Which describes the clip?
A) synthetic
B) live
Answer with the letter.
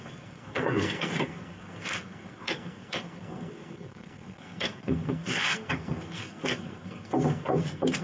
A